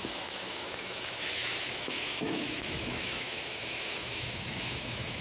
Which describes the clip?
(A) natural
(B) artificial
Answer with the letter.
B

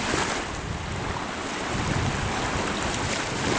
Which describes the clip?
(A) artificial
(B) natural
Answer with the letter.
B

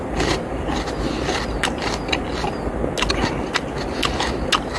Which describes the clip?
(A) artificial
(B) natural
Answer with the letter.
B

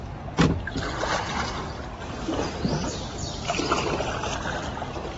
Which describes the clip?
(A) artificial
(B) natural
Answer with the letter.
B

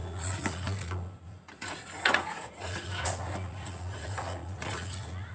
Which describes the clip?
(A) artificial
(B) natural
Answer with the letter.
A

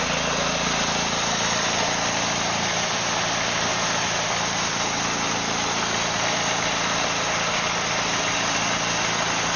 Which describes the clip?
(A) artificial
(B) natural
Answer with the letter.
B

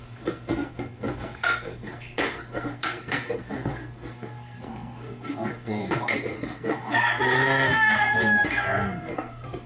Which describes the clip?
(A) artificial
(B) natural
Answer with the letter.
A